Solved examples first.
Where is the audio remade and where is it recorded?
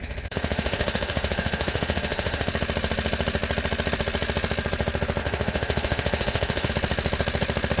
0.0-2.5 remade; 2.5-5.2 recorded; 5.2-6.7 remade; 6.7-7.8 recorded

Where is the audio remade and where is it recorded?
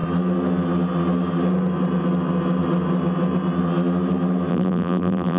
0.0-4.5 recorded; 4.5-5.4 remade